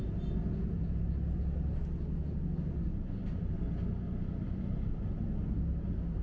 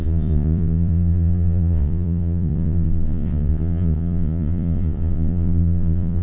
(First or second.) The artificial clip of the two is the second